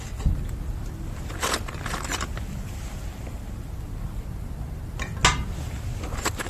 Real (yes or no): yes